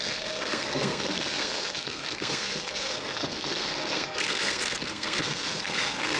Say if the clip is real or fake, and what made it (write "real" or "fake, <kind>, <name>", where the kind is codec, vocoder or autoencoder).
fake, codec, SNAC